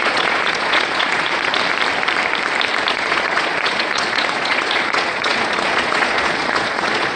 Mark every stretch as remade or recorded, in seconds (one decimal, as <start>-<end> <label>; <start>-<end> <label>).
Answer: 0.0-1.5 remade; 1.5-2.9 recorded; 2.9-7.2 remade